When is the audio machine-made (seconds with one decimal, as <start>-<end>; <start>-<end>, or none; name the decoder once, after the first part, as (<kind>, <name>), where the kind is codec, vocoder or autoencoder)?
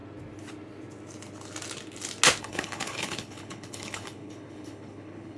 2.4-5.4 (codec, HILCodec)